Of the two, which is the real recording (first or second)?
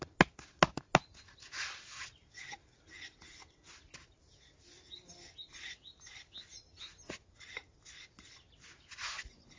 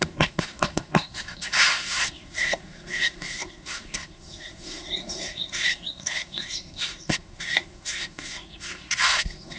first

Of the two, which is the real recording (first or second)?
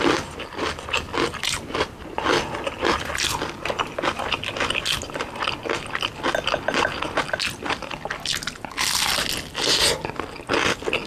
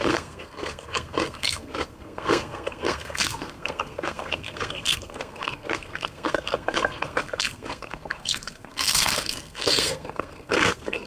first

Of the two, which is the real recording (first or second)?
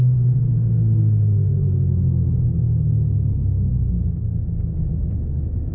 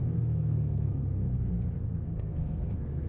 first